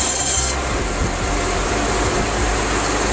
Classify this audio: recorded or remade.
recorded